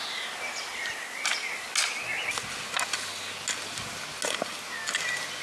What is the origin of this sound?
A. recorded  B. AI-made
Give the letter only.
A